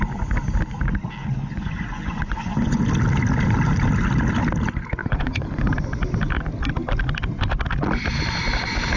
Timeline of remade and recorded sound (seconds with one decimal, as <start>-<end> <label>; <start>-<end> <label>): 0.0-1.2 recorded; 1.2-2.8 remade; 2.8-5.0 recorded; 5.0-5.6 remade; 5.6-9.0 recorded